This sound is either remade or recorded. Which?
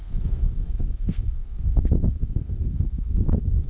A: remade